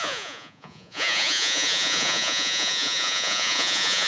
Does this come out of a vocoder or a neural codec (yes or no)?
yes